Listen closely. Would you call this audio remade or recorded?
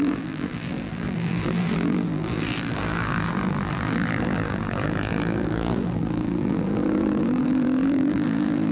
remade